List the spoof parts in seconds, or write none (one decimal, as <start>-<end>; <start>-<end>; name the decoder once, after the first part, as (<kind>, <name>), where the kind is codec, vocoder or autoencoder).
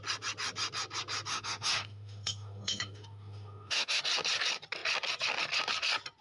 1.3-4.0 (autoencoder, DAC-VAE)